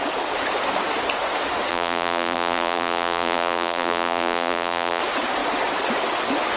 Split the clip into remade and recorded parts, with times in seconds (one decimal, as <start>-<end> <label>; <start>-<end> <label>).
0.0-1.7 recorded; 1.7-5.0 remade; 5.0-6.6 recorded